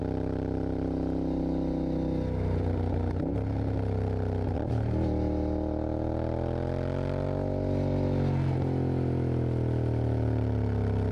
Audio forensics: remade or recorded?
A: recorded